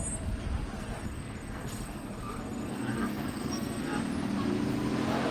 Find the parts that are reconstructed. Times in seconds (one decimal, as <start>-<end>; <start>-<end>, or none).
0.8-4.0